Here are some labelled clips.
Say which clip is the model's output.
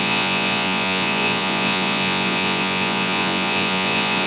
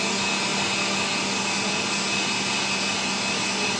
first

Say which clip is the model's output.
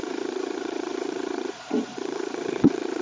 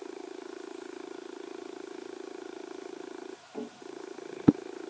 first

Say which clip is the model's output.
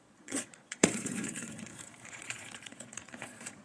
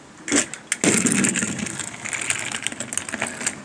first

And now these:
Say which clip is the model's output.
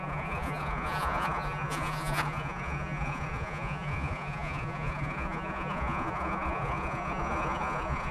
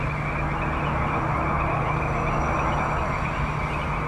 first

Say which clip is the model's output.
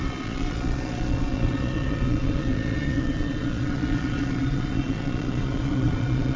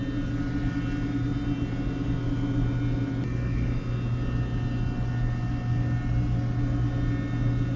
first